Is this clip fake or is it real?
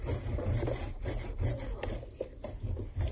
real